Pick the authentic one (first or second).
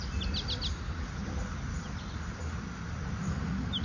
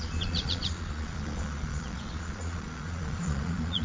first